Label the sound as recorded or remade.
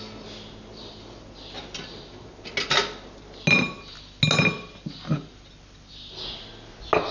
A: recorded